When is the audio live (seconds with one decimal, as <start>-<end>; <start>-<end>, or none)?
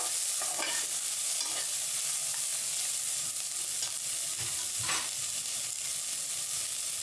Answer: 0.0-7.0